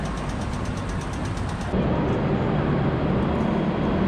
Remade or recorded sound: recorded